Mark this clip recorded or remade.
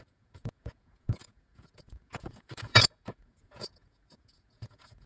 remade